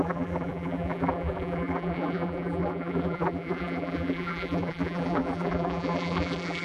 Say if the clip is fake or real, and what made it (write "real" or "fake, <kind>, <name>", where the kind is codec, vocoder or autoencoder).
fake, vocoder, BigVGAN v2